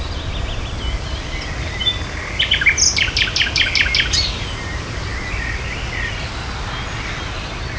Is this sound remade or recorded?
recorded